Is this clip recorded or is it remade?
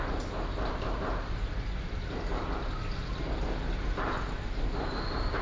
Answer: recorded